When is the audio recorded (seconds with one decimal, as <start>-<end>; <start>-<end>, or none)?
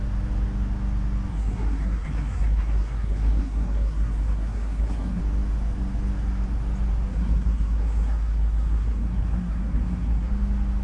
0.0-1.3; 5.2-7.1; 10.3-10.8